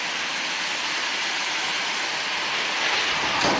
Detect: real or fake real